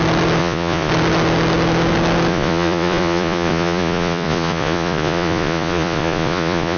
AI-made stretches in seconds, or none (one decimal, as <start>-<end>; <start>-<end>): 0.4-0.9; 2.3-6.8